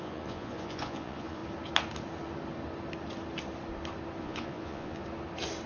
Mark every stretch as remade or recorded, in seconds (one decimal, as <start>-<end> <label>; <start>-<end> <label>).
0.0-1.4 remade; 1.4-4.2 recorded; 4.2-5.0 remade; 5.0-5.7 recorded